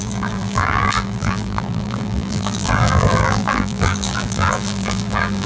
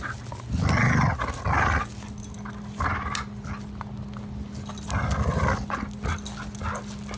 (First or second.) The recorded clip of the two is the second